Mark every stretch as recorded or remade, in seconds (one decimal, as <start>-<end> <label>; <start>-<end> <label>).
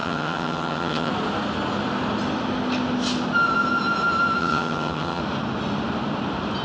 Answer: 0.0-1.1 remade; 1.1-4.4 recorded; 4.4-5.2 remade; 5.2-6.6 recorded